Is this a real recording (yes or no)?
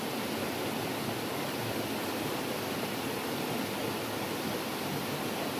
yes